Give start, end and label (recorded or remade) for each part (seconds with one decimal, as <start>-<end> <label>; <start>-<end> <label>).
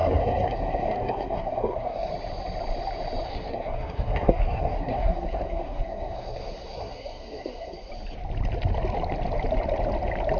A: 0.0-2.1 remade; 2.1-3.3 recorded; 3.3-7.9 remade; 7.9-10.4 recorded